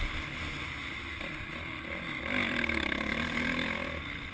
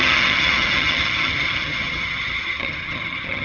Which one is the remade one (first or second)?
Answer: second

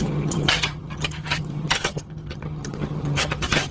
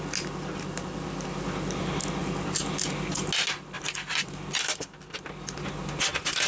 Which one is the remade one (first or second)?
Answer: first